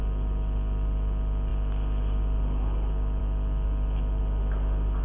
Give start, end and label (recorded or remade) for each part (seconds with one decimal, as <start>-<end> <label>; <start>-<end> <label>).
0.0-5.0 recorded